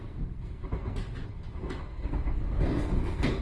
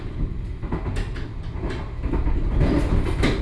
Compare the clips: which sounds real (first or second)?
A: second